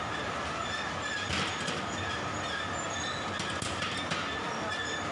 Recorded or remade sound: recorded